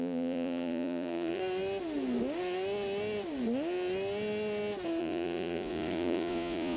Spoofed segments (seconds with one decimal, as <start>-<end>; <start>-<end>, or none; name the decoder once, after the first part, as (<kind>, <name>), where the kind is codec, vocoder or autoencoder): 0.0-1.4 (vocoder, Vocos); 5.0-6.8